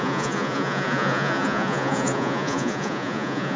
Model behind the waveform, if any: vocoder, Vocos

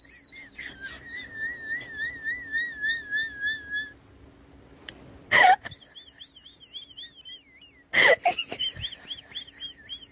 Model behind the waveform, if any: none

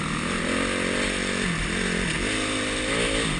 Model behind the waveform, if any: none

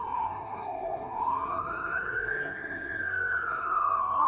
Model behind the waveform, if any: codec, SNAC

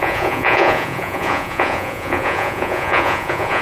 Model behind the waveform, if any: vocoder, Vocos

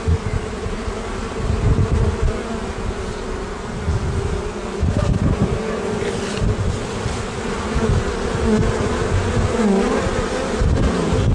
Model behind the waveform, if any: none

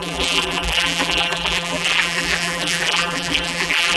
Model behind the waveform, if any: vocoder, BigVGAN v2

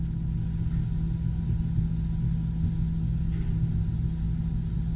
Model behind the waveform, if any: none